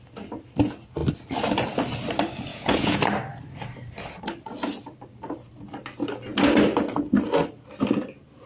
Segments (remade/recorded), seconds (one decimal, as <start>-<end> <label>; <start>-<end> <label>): 0.0-2.5 recorded; 2.5-3.0 remade; 3.0-8.5 recorded